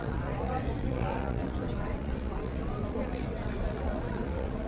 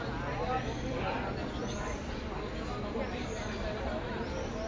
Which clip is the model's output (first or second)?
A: first